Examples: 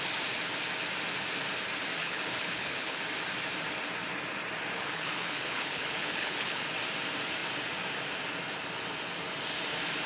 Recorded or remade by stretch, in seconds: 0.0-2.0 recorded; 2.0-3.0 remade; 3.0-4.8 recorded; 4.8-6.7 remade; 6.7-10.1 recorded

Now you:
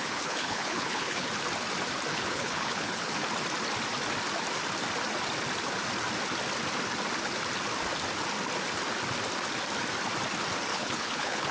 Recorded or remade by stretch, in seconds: 0.0-1.3 remade; 1.3-2.1 recorded; 2.1-3.1 remade; 3.1-10.7 recorded; 10.7-11.5 remade

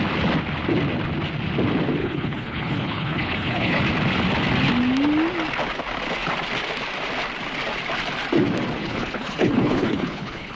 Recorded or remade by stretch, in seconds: 0.0-2.0 recorded; 2.0-3.8 remade; 3.8-8.8 recorded; 8.8-10.6 remade

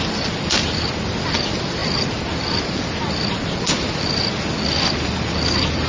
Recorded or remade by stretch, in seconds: 0.0-5.9 recorded